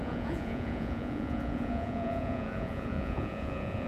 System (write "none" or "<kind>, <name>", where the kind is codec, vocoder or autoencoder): vocoder, Vocos